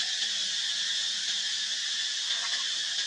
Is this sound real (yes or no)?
yes